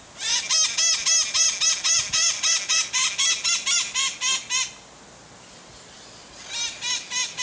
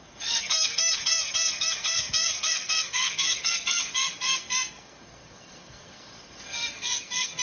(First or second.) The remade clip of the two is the second